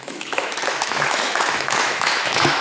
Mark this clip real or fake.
fake